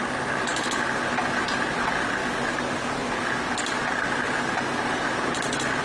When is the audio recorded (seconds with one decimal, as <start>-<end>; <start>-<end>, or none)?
0.0-0.5; 1.2-5.8